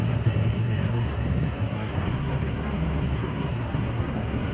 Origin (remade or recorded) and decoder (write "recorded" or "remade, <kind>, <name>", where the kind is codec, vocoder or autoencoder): remade, codec, SNAC